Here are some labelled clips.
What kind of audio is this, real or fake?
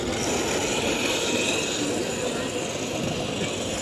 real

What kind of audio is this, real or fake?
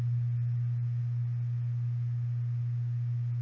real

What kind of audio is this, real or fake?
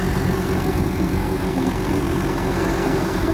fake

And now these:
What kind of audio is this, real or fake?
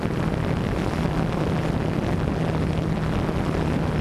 real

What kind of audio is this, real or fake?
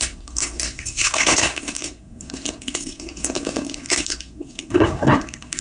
fake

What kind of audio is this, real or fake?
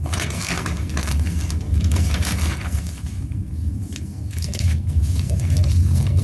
fake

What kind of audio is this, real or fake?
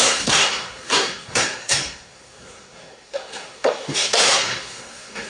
fake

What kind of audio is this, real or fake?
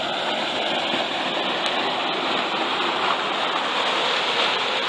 real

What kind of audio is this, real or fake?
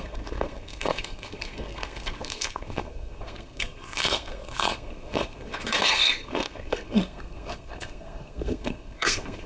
fake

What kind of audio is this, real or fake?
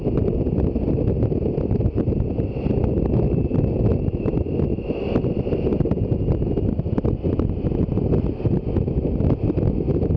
real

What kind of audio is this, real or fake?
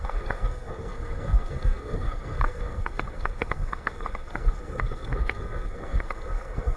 fake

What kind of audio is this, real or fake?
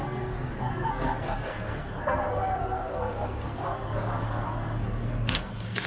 fake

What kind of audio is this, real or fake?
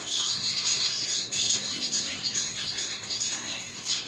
fake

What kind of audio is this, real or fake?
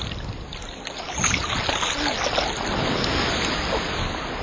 real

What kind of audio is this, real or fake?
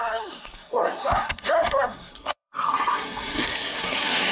fake